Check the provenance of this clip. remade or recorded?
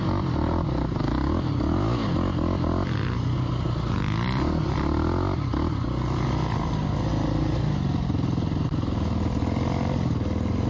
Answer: recorded